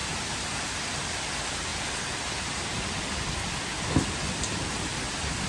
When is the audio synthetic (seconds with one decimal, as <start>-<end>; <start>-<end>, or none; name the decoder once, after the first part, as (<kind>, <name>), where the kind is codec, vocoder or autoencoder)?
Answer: none